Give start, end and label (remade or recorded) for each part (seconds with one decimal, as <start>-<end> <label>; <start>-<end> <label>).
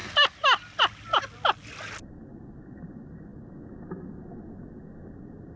0.0-5.6 recorded